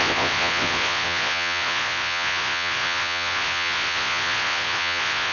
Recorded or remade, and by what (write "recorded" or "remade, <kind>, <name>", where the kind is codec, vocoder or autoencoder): remade, vocoder, Vocos